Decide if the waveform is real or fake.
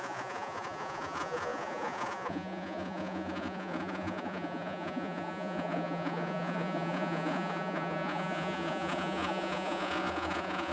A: fake